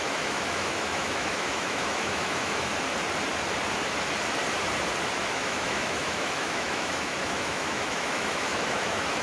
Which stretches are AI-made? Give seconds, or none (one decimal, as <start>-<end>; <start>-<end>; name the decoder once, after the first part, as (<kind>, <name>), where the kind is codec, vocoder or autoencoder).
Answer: 0.0-2.7 (autoencoder, DAC-VAE); 5.2-9.2